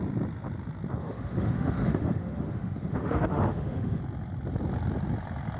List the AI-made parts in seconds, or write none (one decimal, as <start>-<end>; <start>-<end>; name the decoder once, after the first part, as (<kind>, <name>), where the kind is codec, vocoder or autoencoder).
1.0-4.0 (autoencoder, DAC-VAE)